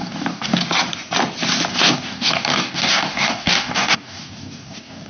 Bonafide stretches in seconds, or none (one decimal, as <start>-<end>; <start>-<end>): 0.6-1.7